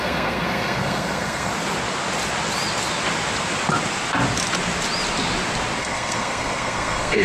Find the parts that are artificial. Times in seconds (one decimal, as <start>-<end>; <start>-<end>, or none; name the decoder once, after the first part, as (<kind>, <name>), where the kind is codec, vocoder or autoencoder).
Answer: 0.0-1.5 (codec, SNAC); 5.8-7.2